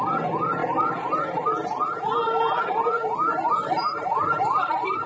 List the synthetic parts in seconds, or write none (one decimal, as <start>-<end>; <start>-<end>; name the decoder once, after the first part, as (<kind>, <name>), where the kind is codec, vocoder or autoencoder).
0.0-0.6 (vocoder, BigVGAN v2); 3.5-5.1